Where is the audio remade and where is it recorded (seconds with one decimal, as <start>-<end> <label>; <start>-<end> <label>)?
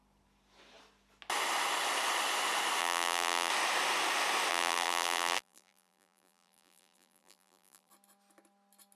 0.0-2.8 recorded; 2.8-3.5 remade; 3.5-4.5 recorded; 4.5-7.9 remade; 7.9-9.0 recorded